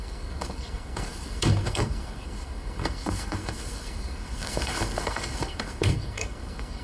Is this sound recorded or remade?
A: remade